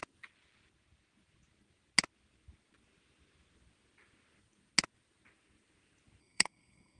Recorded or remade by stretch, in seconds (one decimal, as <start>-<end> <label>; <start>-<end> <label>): 0.0-6.2 recorded; 6.2-7.0 remade